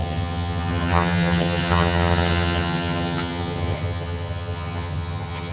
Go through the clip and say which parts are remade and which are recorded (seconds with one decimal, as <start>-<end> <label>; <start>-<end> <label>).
0.0-5.5 remade